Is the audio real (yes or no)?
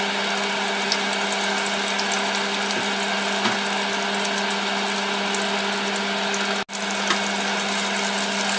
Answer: yes